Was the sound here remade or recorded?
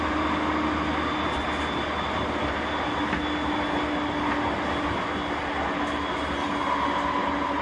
recorded